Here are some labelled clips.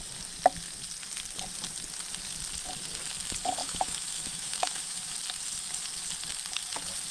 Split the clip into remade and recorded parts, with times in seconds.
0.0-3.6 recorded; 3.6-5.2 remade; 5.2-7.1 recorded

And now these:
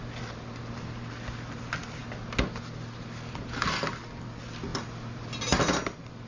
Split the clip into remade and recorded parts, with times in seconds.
0.0-6.3 recorded

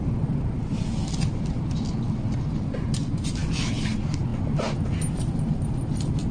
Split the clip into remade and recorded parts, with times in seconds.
0.0-6.3 recorded